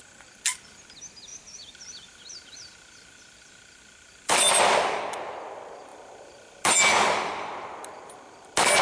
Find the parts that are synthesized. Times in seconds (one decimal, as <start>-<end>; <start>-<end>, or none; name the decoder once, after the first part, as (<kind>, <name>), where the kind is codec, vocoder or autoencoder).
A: 1.3-5.0 (vocoder, BigVGAN v2)